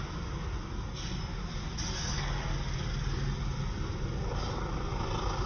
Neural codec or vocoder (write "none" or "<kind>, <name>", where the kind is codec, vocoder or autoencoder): none